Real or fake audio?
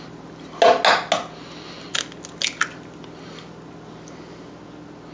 real